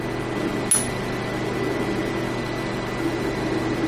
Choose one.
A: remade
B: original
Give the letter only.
B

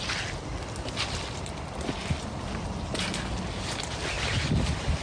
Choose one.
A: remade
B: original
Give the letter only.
B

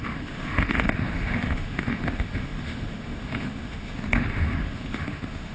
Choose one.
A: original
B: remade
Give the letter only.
B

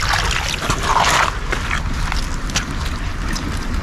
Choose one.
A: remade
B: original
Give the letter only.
B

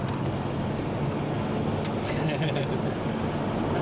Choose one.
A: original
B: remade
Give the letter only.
A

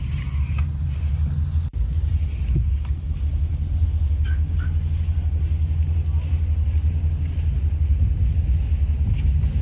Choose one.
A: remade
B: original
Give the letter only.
B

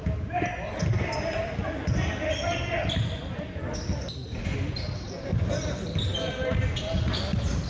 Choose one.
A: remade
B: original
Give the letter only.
B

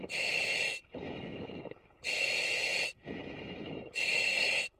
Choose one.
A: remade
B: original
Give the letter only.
A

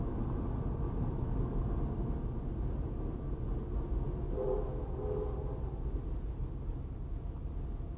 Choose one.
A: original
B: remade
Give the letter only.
A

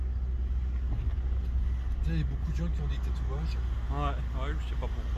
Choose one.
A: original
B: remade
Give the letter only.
A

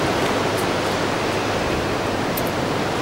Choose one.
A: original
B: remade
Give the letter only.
A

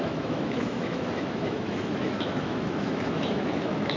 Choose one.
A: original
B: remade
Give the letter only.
B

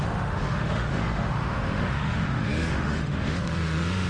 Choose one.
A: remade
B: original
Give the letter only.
A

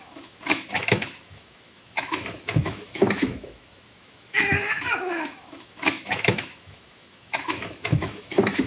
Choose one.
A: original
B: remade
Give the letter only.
B